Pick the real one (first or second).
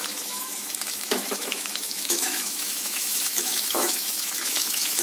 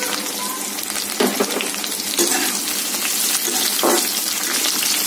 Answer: second